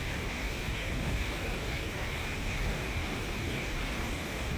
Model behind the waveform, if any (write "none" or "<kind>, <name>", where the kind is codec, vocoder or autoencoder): codec, DAC